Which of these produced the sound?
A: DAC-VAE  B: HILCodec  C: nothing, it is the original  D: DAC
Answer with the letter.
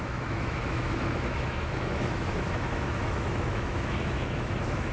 A